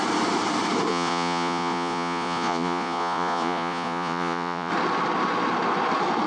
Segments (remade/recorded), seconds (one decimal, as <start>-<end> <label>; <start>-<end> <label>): 0.0-0.9 recorded; 0.9-4.7 remade; 4.7-6.3 recorded